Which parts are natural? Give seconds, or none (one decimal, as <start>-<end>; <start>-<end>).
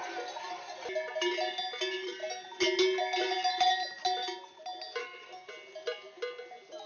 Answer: 0.0-5.0; 5.5-6.9